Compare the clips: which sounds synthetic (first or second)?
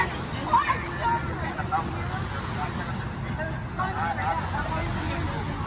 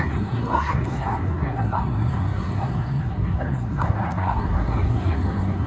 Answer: second